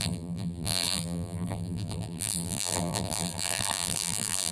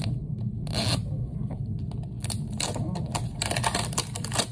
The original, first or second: second